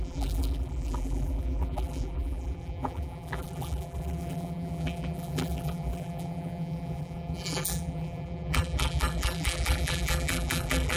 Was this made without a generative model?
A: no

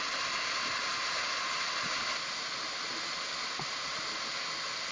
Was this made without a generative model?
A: yes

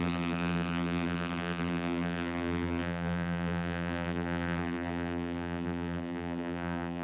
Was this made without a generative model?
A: no